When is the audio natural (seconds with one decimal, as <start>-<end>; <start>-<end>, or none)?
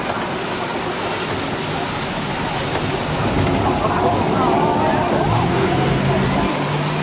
0.0-5.5; 6.0-7.0